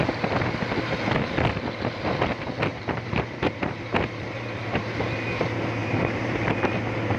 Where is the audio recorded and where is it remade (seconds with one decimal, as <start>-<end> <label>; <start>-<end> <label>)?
0.0-2.7 recorded; 2.7-5.0 remade; 5.0-5.8 recorded; 5.8-6.8 remade; 6.8-7.2 recorded